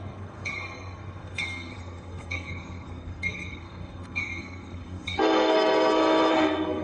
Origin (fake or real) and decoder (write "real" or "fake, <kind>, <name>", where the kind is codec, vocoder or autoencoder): fake, codec, SNAC